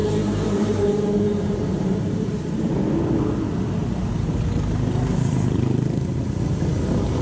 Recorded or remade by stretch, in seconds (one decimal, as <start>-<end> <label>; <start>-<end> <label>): 0.0-2.7 remade; 2.7-3.8 recorded; 3.8-5.2 remade; 5.2-7.2 recorded